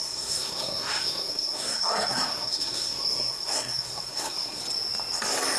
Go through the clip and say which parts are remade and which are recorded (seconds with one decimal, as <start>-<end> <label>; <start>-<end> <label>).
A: 0.0-4.6 remade; 4.6-5.6 recorded